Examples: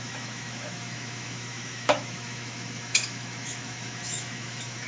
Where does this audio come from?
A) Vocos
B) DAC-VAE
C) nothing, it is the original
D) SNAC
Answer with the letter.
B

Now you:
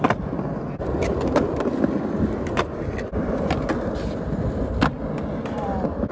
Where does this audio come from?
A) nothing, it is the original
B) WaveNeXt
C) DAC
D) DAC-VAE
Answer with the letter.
A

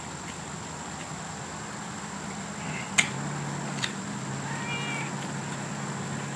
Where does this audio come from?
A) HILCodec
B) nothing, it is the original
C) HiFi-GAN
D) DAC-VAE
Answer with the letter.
B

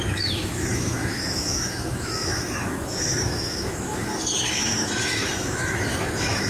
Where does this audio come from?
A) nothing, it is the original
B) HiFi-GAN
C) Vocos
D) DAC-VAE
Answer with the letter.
D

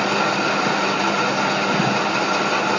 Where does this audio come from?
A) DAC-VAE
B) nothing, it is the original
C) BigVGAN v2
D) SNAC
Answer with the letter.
B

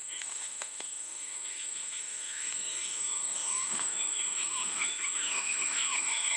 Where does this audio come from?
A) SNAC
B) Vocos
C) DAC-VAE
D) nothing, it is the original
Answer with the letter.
C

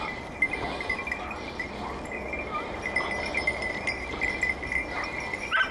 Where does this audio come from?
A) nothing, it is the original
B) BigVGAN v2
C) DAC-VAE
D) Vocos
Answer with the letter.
A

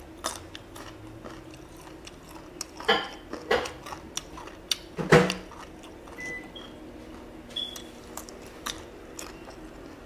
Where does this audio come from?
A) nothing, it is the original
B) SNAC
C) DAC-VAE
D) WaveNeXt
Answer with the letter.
A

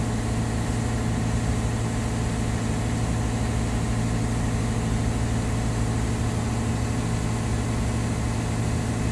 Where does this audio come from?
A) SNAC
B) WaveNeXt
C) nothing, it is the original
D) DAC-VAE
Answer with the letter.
C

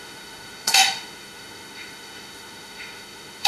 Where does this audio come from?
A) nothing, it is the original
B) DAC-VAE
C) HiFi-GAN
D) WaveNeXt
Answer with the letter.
B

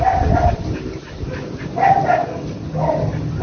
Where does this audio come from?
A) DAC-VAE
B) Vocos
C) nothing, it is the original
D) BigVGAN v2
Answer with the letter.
C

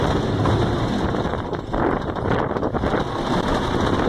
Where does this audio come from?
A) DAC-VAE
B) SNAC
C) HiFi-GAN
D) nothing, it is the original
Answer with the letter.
D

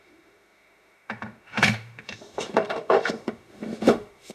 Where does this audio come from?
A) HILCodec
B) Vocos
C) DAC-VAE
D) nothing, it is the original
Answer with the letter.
C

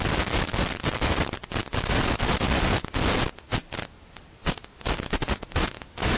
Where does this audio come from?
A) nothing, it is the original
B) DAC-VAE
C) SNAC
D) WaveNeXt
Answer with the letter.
A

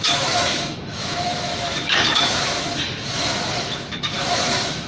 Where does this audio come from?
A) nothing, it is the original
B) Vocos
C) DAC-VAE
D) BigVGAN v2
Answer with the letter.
C